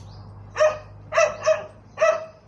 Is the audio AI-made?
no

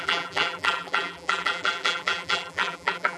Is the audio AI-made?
yes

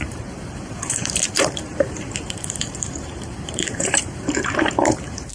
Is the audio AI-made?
yes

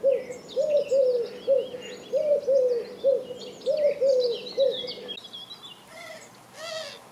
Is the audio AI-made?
no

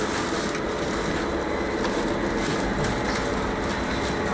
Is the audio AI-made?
no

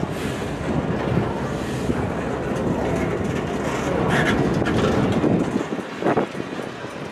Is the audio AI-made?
no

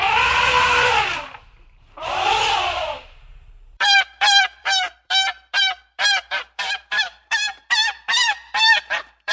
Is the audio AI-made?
yes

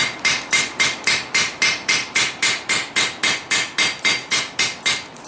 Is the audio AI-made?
no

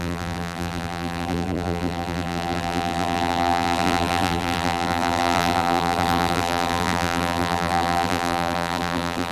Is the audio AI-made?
yes